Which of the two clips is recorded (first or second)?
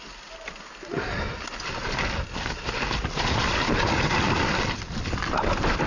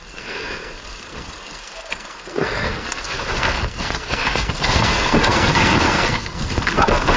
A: first